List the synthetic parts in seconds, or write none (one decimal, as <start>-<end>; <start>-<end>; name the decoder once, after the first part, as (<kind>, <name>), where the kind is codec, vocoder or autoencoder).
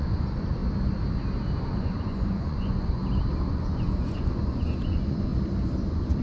0.0-0.6 (vocoder, Vocos); 1.7-3.0; 3.5-5.3; 5.8-6.2